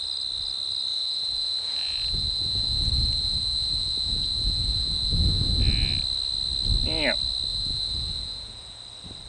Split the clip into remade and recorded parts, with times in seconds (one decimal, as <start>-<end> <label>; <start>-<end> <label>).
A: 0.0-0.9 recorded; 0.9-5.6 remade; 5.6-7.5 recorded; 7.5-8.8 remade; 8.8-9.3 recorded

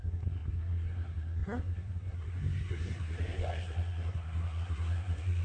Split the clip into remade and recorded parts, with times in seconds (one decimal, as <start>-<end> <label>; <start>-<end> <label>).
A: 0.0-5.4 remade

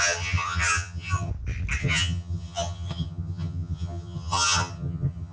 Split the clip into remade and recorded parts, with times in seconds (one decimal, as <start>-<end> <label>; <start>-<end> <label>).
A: 0.0-1.3 remade; 1.3-1.8 recorded; 1.8-5.3 remade

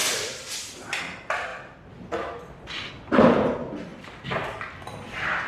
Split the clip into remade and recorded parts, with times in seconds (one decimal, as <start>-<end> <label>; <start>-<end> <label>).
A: 0.0-1.0 remade; 1.0-3.9 recorded; 3.9-5.5 remade

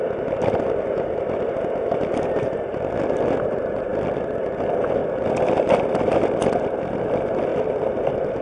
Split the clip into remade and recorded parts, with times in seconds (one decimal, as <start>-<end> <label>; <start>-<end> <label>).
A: 0.0-3.9 recorded; 3.9-4.5 remade; 4.5-5.0 recorded; 5.0-6.4 remade; 6.4-7.5 recorded; 7.5-8.4 remade